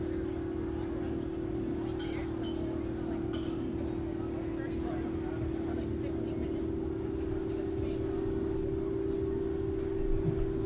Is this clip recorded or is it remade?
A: recorded